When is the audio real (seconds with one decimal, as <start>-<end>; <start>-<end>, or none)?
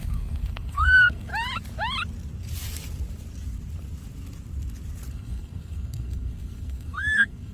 1.3-5.1